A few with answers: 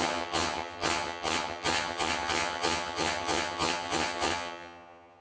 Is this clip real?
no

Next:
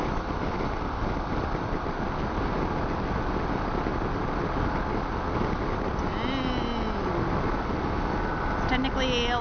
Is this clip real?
yes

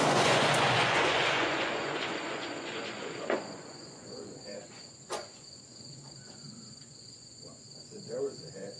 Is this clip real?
no